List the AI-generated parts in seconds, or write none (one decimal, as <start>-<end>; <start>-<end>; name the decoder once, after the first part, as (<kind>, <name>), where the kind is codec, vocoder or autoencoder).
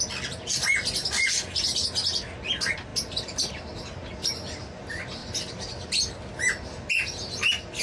none